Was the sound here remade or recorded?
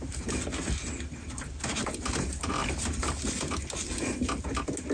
recorded